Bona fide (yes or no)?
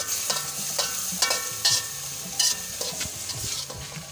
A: yes